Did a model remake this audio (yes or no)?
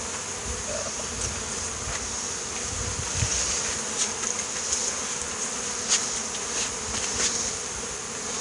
no